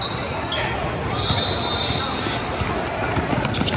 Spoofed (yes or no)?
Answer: no